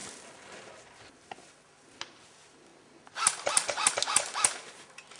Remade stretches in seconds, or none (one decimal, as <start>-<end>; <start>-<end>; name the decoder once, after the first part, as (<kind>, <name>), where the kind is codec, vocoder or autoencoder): none